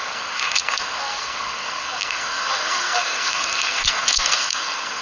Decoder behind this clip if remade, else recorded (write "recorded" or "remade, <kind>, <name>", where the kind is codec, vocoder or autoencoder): remade, codec, SNAC